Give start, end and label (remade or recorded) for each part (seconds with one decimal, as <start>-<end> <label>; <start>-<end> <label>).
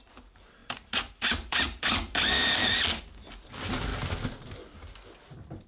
0.0-0.6 remade; 0.6-3.0 recorded; 3.0-3.9 remade; 3.9-5.7 recorded